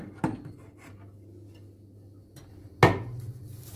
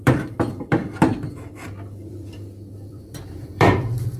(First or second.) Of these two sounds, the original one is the first